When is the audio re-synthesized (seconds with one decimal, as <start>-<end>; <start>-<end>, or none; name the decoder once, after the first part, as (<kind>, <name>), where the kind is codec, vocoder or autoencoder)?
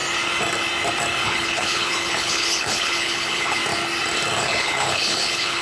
1.2-3.6 (codec, HILCodec); 4.4-5.6